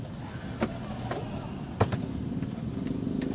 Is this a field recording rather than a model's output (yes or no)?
yes